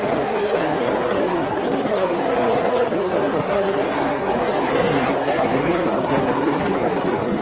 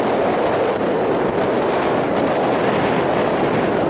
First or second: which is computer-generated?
first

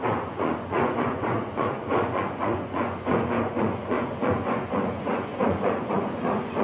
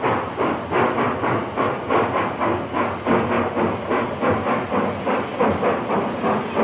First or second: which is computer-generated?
first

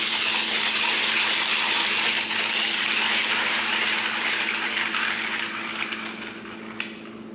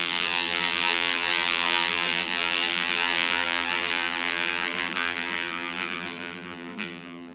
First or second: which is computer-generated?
second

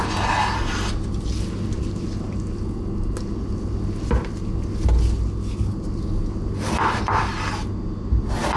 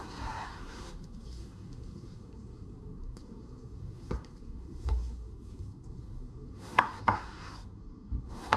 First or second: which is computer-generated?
second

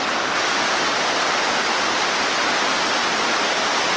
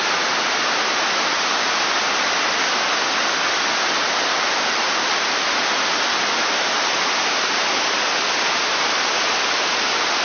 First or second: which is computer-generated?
second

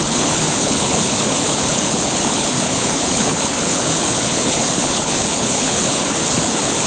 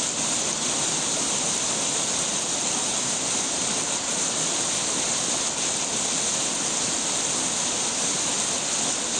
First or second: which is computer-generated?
first